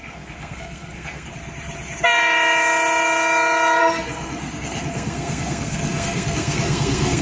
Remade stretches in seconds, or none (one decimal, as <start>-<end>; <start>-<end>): 0.0-1.3; 3.8-7.2